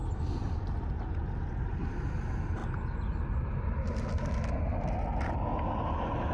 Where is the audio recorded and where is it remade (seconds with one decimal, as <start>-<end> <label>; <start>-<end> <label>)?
0.0-1.9 remade; 1.9-6.3 recorded